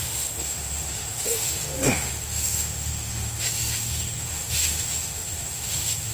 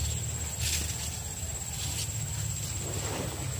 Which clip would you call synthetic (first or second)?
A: first